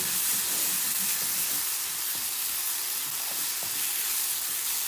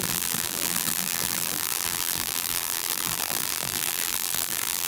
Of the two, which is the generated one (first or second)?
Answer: second